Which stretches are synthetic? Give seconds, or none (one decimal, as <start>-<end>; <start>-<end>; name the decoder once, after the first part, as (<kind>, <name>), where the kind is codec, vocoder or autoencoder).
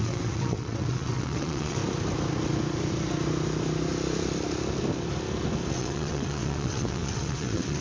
0.0-1.8 (vocoder, WaveNeXt); 5.7-7.8